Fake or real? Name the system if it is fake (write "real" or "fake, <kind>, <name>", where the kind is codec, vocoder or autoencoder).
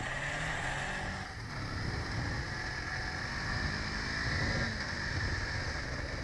real